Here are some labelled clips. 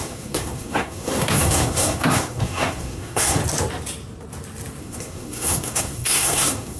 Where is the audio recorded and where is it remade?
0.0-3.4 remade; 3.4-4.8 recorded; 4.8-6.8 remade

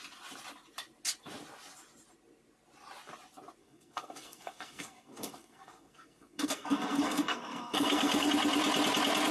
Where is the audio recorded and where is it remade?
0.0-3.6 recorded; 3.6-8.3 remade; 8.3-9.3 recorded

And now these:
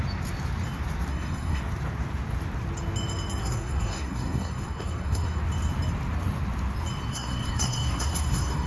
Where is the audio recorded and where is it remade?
0.0-1.1 recorded; 1.1-1.6 remade; 1.6-3.4 recorded; 3.4-5.4 remade; 5.4-7.1 recorded; 7.1-8.7 remade

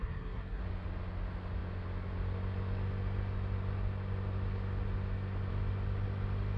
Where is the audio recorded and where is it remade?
0.0-0.6 remade; 0.6-6.6 recorded

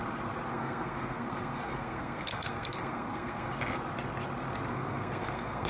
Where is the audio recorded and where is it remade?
0.0-0.5 recorded; 0.5-3.5 remade; 3.5-4.7 recorded; 4.7-5.7 remade

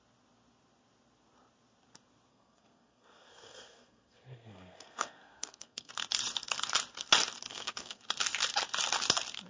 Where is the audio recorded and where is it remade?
0.0-2.3 recorded; 2.3-5.9 remade; 5.9-7.5 recorded; 7.5-8.0 remade; 8.0-9.5 recorded

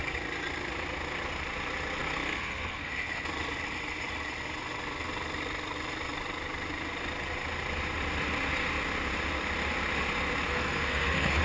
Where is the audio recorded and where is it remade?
0.0-2.0 recorded; 2.0-2.9 remade; 2.9-10.5 recorded; 10.5-11.4 remade

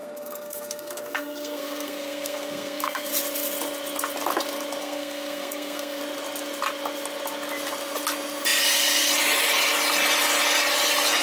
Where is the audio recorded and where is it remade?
0.0-3.1 remade; 3.1-4.8 recorded; 4.8-6.0 remade; 6.0-11.2 recorded